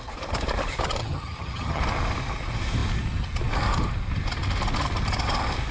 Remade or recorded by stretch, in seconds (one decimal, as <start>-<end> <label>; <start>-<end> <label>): 0.0-1.0 recorded; 1.0-1.8 remade; 1.8-5.7 recorded